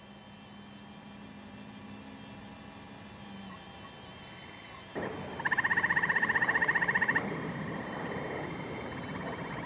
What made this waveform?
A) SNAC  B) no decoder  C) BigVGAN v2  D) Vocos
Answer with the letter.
B